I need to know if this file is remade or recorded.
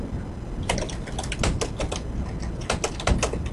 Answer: recorded